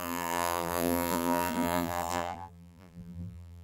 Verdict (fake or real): fake